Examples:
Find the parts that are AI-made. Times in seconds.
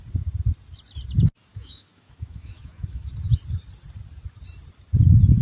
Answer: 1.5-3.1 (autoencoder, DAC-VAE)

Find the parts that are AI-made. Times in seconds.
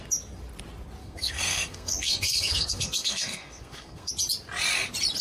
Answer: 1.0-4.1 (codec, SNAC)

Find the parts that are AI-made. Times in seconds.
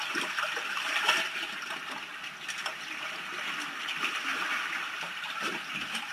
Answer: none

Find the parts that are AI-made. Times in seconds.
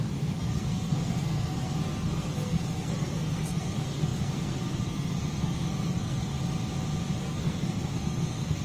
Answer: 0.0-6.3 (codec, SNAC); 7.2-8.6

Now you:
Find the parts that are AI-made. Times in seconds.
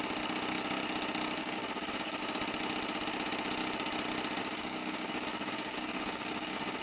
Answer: 1.4-2.2 (codec, DAC); 4.4-6.8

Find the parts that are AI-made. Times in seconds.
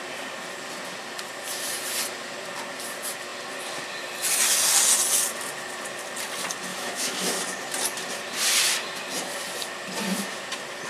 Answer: 6.7-7.4 (autoencoder, DAC-VAE)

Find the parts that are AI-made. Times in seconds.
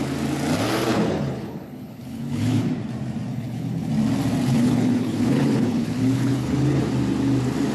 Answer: 0.9-2.7 (codec, HILCodec); 3.3-3.9; 4.5-6.8